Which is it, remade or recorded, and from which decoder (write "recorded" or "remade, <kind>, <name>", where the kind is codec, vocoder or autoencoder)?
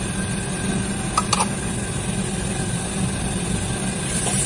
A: recorded